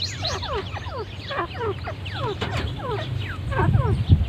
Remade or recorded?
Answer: remade